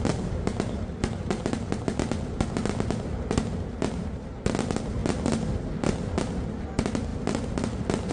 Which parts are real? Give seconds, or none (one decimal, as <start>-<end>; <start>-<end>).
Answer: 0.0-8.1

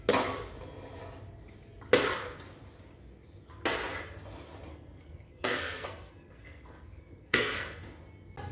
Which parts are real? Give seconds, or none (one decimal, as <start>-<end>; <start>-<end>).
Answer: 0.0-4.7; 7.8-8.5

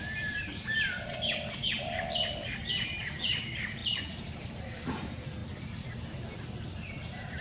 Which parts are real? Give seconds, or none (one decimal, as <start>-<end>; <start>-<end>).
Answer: none

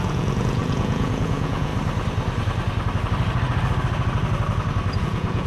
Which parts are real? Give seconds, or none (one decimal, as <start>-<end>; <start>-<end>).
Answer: 1.7-5.0